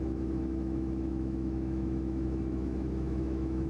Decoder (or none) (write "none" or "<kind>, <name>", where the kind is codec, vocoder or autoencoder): autoencoder, DAC-VAE